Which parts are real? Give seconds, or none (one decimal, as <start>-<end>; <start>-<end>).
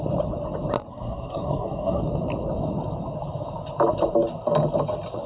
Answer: 0.0-0.9; 2.0-5.3